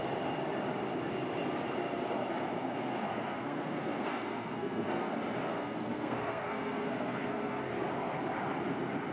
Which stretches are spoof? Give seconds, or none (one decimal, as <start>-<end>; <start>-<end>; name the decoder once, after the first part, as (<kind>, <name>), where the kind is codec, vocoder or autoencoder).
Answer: 2.6-5.1 (codec, SNAC); 5.5-7.7